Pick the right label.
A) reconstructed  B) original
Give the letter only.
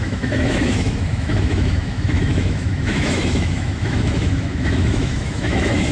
A